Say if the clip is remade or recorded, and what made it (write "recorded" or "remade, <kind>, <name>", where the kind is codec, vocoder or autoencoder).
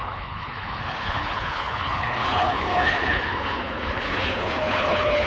remade, codec, HILCodec